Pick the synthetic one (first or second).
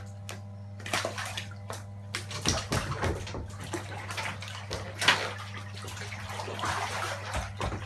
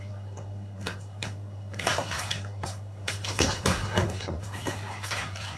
second